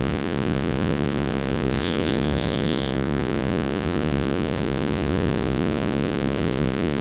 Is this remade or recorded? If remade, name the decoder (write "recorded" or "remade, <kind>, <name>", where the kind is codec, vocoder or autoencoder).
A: remade, vocoder, Vocos